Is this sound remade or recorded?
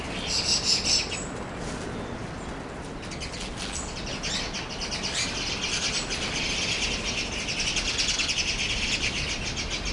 recorded